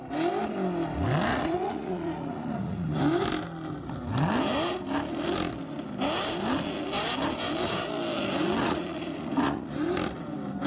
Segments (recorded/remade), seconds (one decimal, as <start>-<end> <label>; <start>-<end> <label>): 0.0-1.3 recorded; 1.3-3.0 remade; 3.0-8.6 recorded; 8.6-9.7 remade; 9.7-10.7 recorded